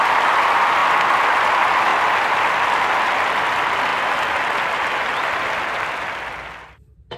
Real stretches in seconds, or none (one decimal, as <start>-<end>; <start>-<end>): 0.0-1.9; 2.5-7.2